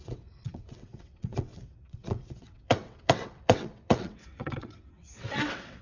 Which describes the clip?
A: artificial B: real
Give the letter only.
A